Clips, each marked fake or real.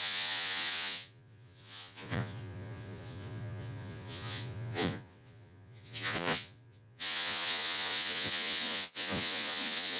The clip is fake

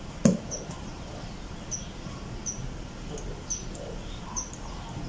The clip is real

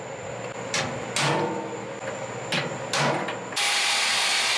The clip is real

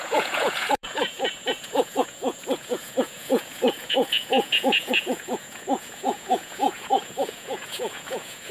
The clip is fake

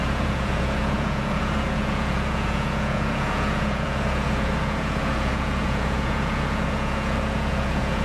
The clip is fake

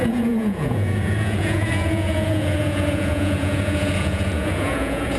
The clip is fake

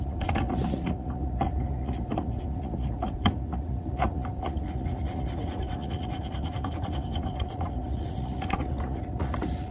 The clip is fake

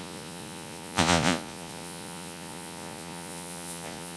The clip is fake